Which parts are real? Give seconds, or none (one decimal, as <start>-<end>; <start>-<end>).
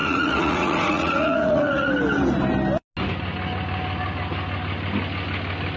1.9-5.8